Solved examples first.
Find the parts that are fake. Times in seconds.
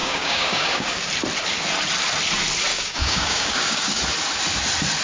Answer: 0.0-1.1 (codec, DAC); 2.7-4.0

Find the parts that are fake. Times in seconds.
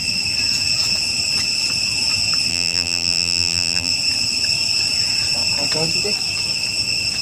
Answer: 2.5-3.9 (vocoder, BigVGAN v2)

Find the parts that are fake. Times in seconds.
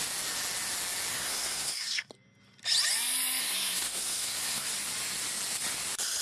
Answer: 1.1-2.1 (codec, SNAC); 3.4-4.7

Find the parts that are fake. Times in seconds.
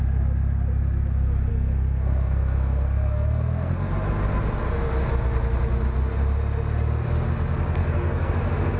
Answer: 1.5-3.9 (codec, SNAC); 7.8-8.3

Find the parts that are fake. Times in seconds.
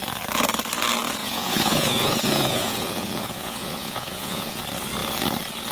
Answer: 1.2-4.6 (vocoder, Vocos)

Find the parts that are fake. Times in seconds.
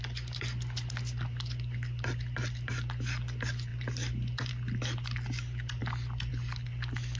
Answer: none